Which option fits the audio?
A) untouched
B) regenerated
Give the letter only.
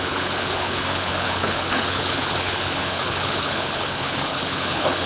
B